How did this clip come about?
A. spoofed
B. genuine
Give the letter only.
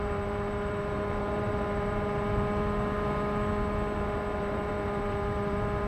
A